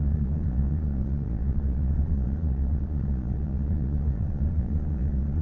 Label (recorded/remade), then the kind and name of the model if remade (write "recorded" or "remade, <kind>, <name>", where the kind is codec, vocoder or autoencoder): remade, vocoder, Vocos